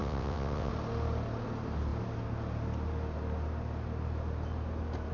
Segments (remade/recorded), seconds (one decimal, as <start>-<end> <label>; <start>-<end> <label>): 0.0-0.7 remade; 0.7-5.1 recorded